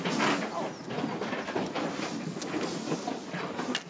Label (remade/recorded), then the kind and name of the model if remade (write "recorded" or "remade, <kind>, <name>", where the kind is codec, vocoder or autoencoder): recorded